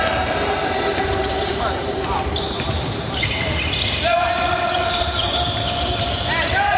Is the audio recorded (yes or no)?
no